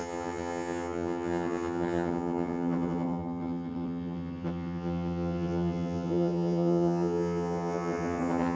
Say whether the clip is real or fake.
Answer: fake